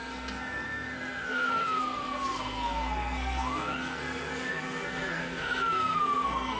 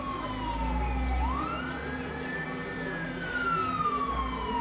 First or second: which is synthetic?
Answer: first